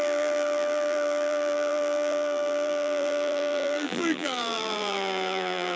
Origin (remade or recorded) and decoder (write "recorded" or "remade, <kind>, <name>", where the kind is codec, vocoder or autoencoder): remade, vocoder, BigVGAN v2